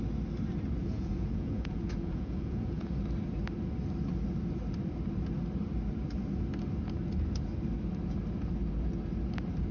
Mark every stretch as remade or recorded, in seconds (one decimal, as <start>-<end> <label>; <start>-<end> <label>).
0.0-0.8 recorded; 0.8-2.9 remade; 2.9-9.7 recorded